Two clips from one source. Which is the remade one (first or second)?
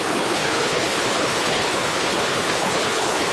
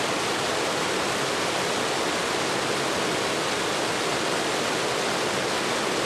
first